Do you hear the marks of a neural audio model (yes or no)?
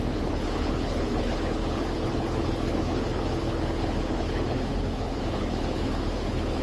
yes